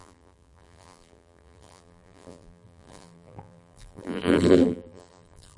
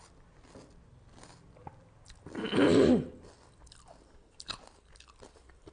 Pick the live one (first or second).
second